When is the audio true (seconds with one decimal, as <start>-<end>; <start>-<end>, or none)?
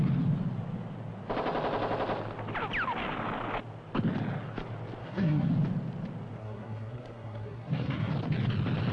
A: 0.0-5.0; 5.5-6.4; 8.1-8.9